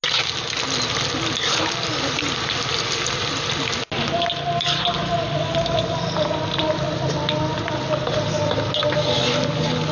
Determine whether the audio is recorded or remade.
recorded